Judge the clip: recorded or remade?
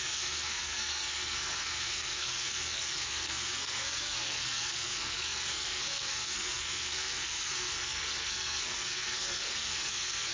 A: remade